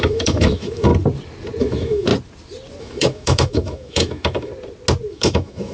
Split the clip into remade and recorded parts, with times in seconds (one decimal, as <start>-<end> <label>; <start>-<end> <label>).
0.0-0.9 remade; 0.9-1.6 recorded; 1.6-2.1 remade; 2.1-2.8 recorded; 2.8-4.5 remade; 4.5-5.1 recorded; 5.1-5.7 remade